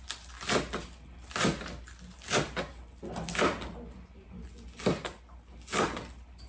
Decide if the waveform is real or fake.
real